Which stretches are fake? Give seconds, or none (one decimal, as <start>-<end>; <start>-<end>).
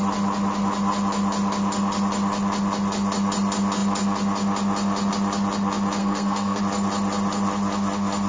6.0-6.6